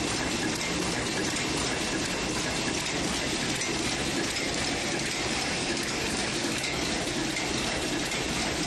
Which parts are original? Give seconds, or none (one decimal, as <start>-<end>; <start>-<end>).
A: 0.0-5.6; 6.9-8.7